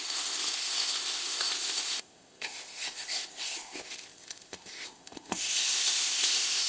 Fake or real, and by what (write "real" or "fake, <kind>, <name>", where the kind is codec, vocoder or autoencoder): fake, codec, ZipCodec